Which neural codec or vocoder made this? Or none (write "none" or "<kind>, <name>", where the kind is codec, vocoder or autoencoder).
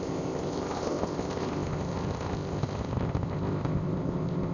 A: codec, ZipCodec